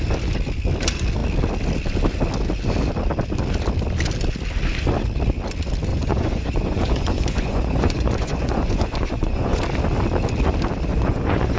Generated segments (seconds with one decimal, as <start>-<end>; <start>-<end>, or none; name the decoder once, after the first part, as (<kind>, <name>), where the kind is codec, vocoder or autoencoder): 5.9-9.6 (vocoder, Vocos); 10.9-11.6